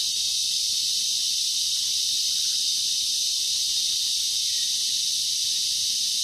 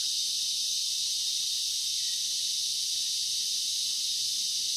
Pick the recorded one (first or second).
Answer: second